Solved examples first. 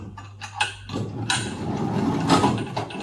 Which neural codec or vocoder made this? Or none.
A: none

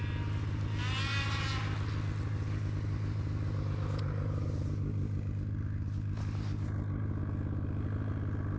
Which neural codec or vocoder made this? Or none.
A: none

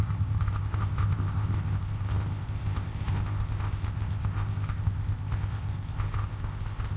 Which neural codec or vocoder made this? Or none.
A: codec, ZipCodec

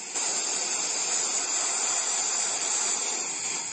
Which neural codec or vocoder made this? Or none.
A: none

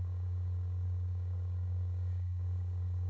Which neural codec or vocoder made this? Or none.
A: codec, DAC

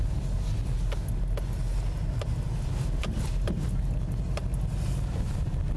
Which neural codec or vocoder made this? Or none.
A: none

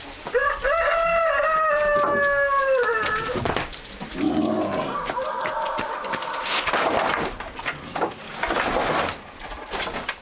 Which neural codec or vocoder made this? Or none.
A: none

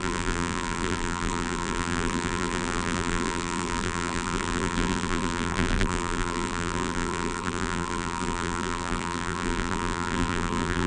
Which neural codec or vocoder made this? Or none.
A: vocoder, BigVGAN v2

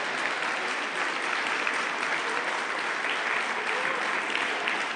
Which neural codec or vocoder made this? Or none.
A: none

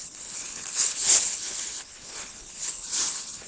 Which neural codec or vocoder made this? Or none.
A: codec, HILCodec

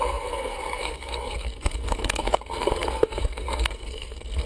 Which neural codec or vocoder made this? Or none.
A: codec, SNAC